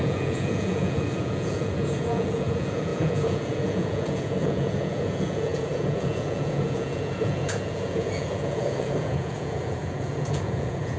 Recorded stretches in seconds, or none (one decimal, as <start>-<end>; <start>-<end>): none